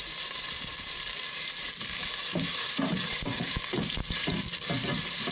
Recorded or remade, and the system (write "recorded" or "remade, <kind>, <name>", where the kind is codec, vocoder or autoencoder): remade, vocoder, BigVGAN v2